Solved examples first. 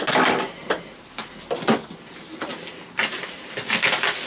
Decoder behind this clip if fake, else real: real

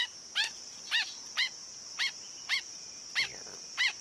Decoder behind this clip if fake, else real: fake, vocoder, BigVGAN v2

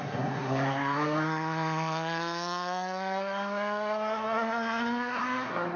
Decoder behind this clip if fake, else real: fake, codec, SNAC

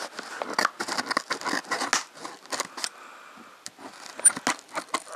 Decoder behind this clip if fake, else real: real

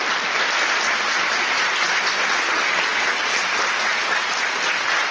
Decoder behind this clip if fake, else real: real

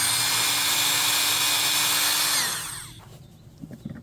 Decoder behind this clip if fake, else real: real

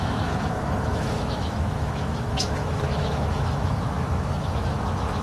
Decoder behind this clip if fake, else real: fake, autoencoder, DAC-VAE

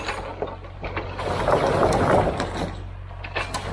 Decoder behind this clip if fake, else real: real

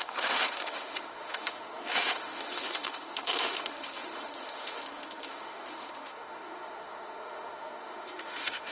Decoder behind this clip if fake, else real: fake, autoencoder, DAC-VAE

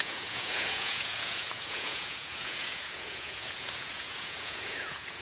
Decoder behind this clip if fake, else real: fake, vocoder, Vocos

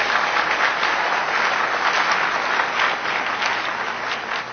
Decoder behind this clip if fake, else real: real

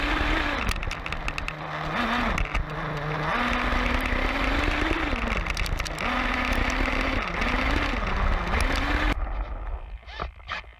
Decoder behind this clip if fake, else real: real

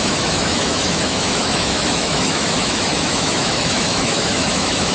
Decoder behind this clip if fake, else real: fake, autoencoder, DAC-VAE